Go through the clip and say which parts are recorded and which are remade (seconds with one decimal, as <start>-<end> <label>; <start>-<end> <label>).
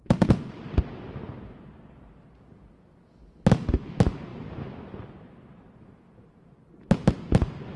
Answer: 0.0-7.8 recorded